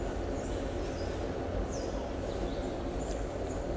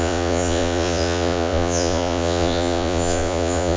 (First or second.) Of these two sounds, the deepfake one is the second